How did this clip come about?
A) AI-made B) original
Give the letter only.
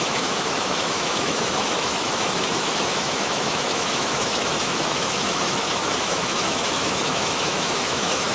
A